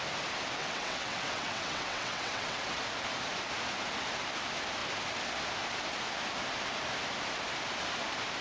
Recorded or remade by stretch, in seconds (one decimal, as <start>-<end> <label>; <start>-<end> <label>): 0.0-0.6 recorded; 0.6-2.8 remade; 2.8-8.4 recorded